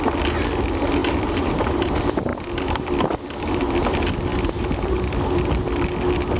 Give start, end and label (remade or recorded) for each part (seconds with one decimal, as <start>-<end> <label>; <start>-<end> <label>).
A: 0.0-1.0 recorded; 1.0-1.9 remade; 1.9-4.3 recorded; 4.3-5.1 remade; 5.1-6.4 recorded